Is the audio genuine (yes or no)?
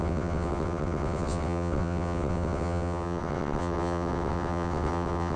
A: no